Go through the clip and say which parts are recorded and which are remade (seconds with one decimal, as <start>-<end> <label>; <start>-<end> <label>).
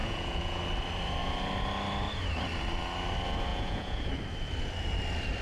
0.0-0.6 remade; 0.6-3.5 recorded; 3.5-4.1 remade; 4.1-5.4 recorded